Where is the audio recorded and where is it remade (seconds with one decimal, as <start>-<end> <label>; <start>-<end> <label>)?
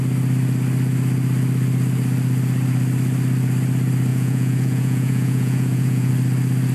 0.0-4.1 recorded; 4.1-6.1 remade; 6.1-6.7 recorded